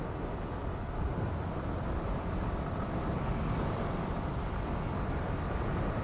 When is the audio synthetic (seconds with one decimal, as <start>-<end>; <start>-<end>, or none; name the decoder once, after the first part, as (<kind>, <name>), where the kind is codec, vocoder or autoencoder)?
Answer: none